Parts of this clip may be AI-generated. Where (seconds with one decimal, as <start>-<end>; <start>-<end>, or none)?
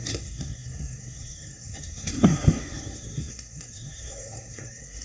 0.0-5.0